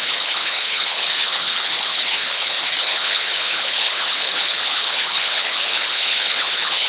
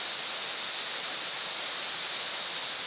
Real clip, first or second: second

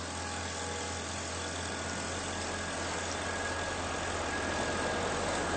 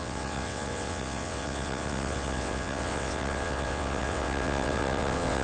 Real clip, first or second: first